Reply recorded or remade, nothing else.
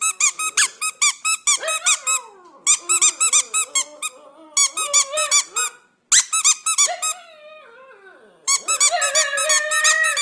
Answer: recorded